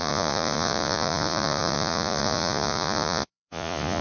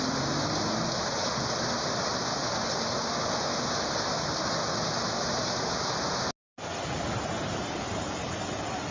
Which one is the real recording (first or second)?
second